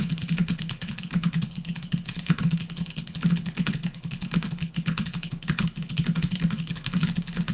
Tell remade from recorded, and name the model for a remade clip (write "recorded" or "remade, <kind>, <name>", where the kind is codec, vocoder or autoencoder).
remade, codec, HILCodec